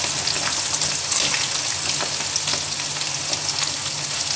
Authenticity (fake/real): real